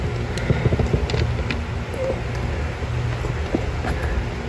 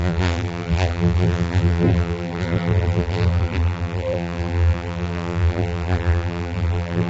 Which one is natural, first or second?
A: first